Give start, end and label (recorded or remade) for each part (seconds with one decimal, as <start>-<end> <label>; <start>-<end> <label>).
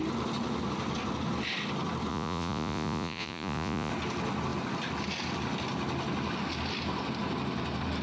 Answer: 0.0-2.1 recorded; 2.1-3.9 remade; 3.9-8.0 recorded